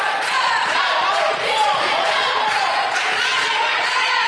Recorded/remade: remade